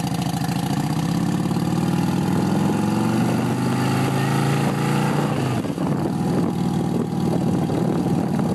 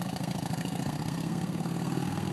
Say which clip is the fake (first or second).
second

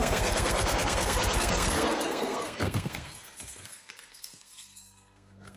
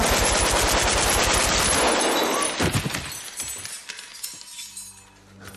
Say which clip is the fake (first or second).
first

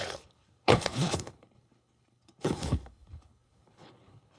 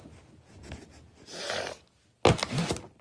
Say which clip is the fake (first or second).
first